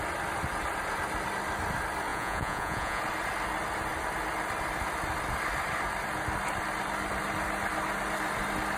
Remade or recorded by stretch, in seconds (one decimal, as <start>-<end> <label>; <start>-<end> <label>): 0.0-2.1 recorded; 2.1-3.0 remade; 3.0-8.8 recorded